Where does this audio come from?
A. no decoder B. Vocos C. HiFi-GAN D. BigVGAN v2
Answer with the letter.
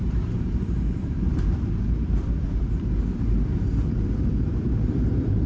D